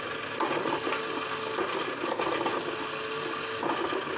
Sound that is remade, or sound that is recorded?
recorded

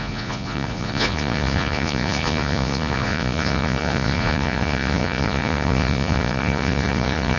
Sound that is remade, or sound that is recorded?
remade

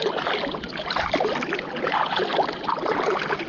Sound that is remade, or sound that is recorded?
recorded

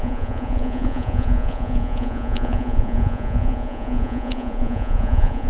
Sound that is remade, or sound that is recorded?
remade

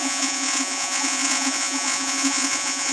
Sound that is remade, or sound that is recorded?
remade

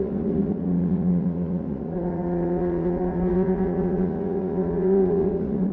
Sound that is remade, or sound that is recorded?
remade